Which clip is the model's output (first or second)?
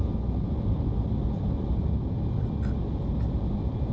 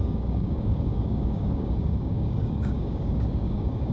second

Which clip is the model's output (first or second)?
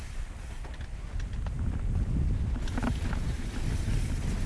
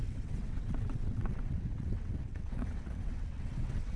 second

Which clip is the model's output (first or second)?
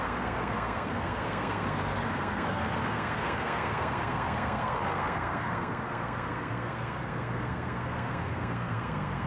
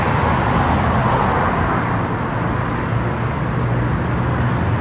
first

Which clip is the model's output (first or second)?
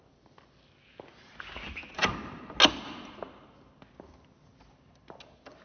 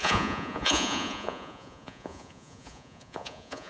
second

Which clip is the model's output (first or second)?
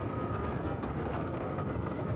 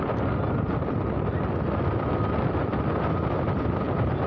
first